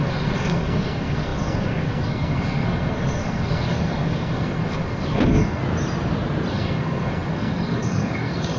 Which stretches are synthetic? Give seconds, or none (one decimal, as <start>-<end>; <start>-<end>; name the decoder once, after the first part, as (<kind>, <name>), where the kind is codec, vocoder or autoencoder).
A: 0.0-5.6 (codec, SNAC); 6.5-8.6